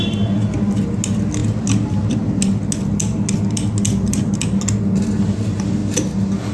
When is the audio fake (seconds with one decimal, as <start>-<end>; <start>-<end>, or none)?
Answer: none

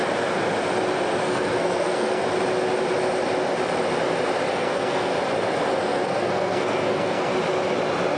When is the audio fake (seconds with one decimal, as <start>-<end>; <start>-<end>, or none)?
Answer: 1.2-2.2; 4.5-5.1; 5.8-7.3

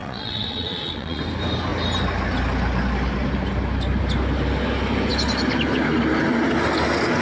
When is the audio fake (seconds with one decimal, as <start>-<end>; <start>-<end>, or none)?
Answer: 0.0-1.2

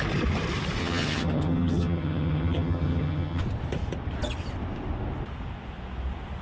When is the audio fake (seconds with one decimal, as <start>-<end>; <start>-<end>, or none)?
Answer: 0.8-3.4

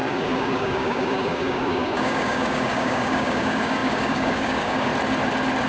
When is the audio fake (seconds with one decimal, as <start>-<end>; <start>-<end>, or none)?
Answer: 0.0-4.9

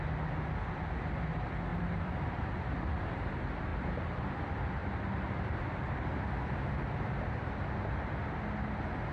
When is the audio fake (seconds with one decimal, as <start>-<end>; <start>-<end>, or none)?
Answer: 1.7-3.3; 3.7-4.3; 4.8-5.8

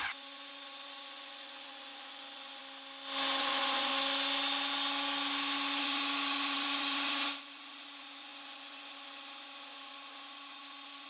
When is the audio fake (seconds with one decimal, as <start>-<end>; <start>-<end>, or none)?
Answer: 0.0-2.6; 3.4-3.9; 5.8-11.1

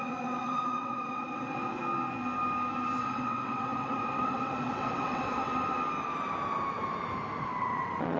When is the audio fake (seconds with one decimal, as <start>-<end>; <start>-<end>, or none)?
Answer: 0.0-1.8; 3.0-5.5; 7.6-8.2